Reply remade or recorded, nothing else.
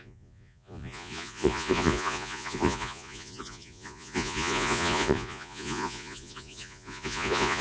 remade